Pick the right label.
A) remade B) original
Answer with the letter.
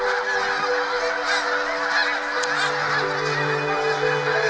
B